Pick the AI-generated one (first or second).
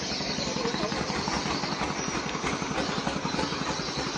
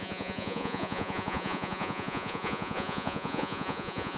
second